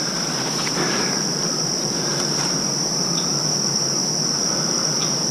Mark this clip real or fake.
fake